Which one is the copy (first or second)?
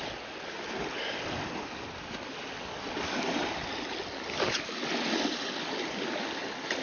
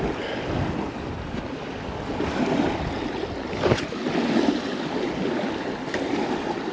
second